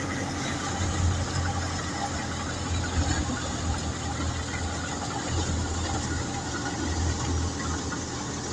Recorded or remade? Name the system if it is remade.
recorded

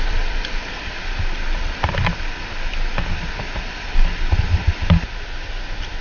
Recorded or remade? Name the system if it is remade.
recorded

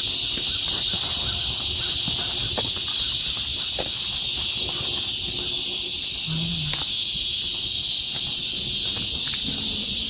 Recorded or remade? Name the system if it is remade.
recorded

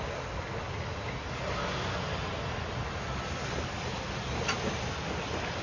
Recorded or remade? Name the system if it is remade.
recorded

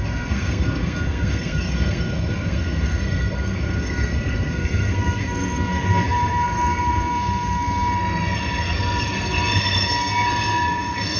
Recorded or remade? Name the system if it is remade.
remade, codec, SNAC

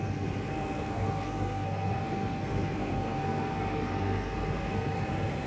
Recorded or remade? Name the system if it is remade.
remade, codec, SNAC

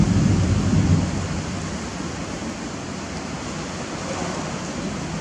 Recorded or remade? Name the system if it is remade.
recorded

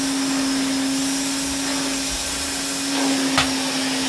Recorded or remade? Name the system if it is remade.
recorded